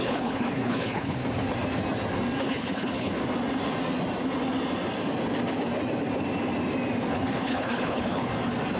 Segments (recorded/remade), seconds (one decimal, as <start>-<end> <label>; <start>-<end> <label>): 0.0-1.2 remade; 1.2-2.4 recorded; 2.4-3.2 remade; 3.2-7.1 recorded; 7.1-8.3 remade; 8.3-8.8 recorded